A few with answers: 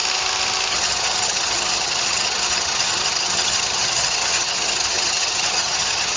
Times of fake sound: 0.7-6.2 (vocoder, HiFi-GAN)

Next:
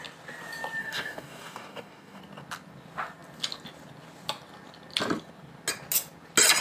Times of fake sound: 0.8-2.2 (codec, DAC)

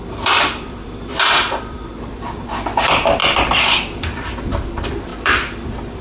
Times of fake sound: 0.0-6.0 (vocoder, BigVGAN v2)

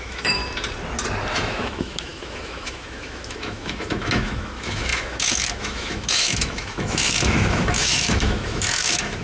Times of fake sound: 0.0-0.4 (autoencoder, DAC-VAE); 1.3-9.2

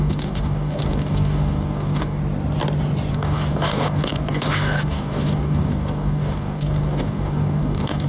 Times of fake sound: 0.0-2.2 (codec, DAC); 3.1-8.1

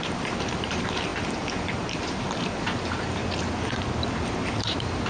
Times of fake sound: 0.0-3.2 (vocoder, BigVGAN v2); 4.5-5.1

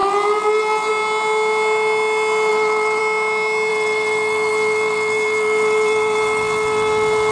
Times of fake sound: 0.0-0.9 (vocoder, BigVGAN v2); 2.5-3.0; 3.7-7.3

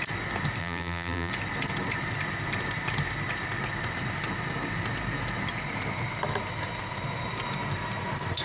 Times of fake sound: 0.6-1.3 (vocoder, BigVGAN v2)